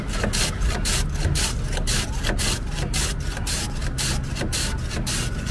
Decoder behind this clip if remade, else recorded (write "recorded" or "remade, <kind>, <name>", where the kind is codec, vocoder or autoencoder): recorded